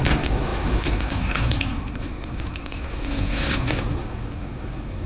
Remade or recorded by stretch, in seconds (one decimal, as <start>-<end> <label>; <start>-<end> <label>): 0.0-5.1 remade